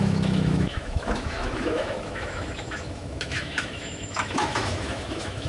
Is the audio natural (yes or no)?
no